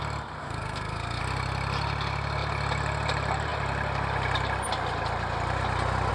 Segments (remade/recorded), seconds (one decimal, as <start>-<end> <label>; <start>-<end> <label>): 0.0-0.4 recorded; 0.4-1.2 remade; 1.2-6.1 recorded